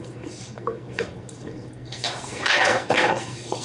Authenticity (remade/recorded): remade